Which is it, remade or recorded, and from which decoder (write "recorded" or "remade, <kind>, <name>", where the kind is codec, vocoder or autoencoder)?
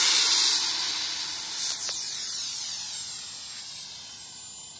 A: recorded